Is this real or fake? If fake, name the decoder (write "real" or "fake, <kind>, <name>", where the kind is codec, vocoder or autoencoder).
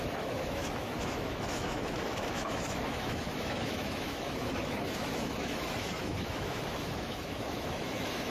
fake, autoencoder, DAC-VAE